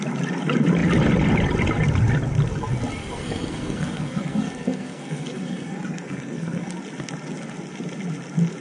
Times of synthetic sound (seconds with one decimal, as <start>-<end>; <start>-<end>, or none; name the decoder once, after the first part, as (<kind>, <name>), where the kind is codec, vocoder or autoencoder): 3.0-6.7 (codec, SNAC)

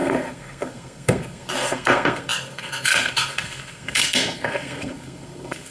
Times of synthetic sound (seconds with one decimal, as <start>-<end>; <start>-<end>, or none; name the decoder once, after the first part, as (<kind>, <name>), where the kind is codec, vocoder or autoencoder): 0.0-5.7 (codec, SNAC)

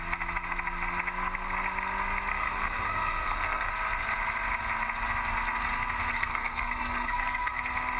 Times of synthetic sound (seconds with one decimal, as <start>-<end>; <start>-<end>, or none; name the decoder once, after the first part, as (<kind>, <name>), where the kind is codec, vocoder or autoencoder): 2.3-3.7 (codec, SNAC); 6.1-7.6

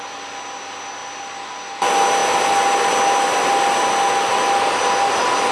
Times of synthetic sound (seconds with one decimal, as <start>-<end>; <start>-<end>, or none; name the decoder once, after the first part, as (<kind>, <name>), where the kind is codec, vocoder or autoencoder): none

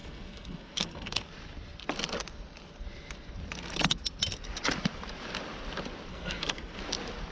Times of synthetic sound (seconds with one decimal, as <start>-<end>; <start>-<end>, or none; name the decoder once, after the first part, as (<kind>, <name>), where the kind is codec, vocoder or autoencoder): 0.0-1.2 (codec, SNAC); 6.1-6.8

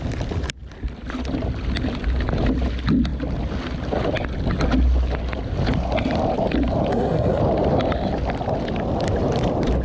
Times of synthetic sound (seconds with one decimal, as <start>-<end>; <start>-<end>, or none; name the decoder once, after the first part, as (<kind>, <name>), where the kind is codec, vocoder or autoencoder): 6.9-7.4 (codec, SNAC)

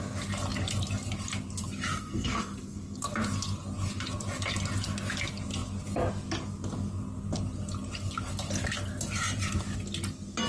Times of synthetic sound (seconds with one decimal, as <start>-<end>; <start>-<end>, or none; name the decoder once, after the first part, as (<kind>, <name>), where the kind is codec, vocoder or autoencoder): 1.9-3.0 (codec, SNAC)